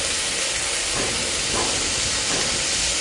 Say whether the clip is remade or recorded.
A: recorded